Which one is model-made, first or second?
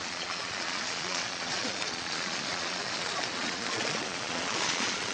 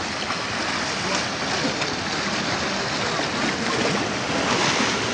first